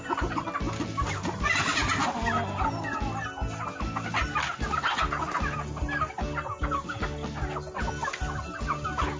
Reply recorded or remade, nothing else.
recorded